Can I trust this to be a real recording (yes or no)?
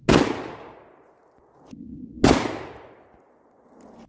yes